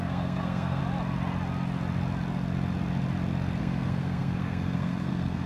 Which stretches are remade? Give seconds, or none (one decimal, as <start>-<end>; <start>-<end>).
0.0-0.8; 3.6-5.5